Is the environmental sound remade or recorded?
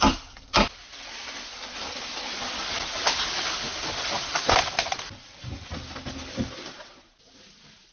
recorded